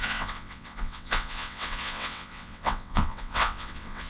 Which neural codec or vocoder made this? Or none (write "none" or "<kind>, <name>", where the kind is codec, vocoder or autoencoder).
vocoder, WaveNeXt